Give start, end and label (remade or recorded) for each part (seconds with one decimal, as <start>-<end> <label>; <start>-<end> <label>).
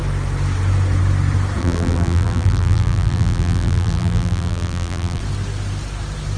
0.0-1.6 recorded; 1.6-5.2 remade; 5.2-6.4 recorded